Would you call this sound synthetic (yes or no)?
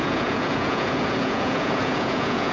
yes